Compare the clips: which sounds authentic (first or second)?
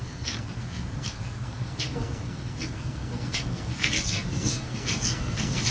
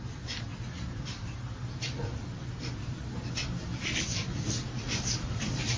second